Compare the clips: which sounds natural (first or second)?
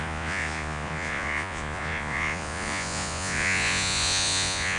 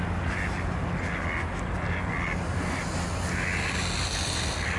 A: second